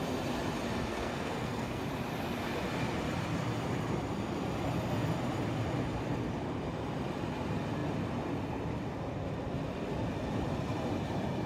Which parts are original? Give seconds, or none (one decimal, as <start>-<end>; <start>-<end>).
0.0-0.9; 1.8-11.5